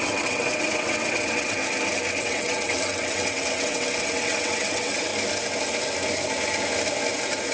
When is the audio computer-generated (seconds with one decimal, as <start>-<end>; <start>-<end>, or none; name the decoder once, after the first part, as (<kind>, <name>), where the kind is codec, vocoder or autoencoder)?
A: 0.0-1.6 (vocoder, WaveNeXt); 2.2-5.1